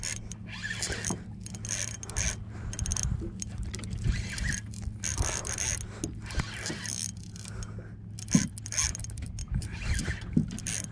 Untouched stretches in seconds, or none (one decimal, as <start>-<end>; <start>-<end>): 0.0-2.9; 3.7-9.4; 10.1-10.9